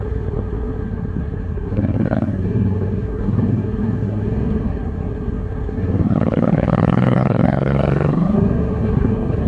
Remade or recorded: remade